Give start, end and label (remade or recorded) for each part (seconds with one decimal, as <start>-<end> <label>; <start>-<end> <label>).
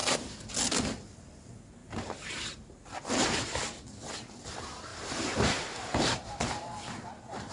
0.0-0.5 remade; 0.5-1.8 recorded; 1.8-2.8 remade; 2.8-4.9 recorded; 4.9-7.5 remade